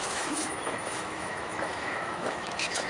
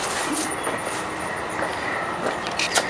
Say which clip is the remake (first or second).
first